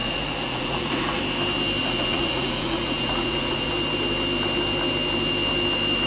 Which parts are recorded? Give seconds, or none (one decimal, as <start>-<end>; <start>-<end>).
1.2-1.8; 3.7-6.1